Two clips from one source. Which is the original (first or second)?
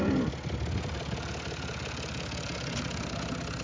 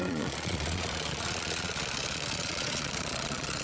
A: first